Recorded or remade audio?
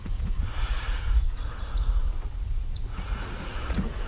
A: remade